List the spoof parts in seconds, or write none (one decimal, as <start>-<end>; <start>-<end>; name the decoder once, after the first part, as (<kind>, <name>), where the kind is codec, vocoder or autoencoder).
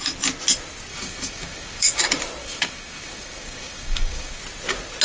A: 0.9-2.0 (codec, DAC); 2.4-4.4